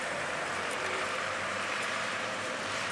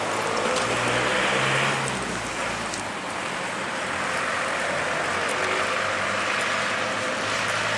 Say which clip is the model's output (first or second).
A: first